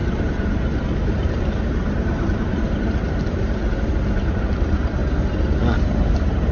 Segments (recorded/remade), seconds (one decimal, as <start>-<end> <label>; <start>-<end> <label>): 0.0-3.6 remade; 3.6-4.3 recorded; 4.3-5.0 remade; 5.0-6.1 recorded; 6.1-6.5 remade